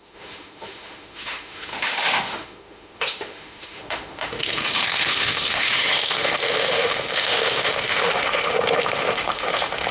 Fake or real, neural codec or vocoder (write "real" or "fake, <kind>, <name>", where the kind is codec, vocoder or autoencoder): fake, autoencoder, DAC-VAE